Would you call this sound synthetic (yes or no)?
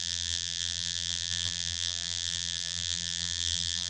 yes